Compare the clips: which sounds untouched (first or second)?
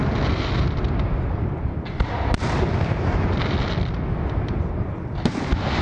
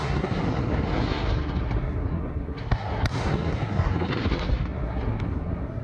first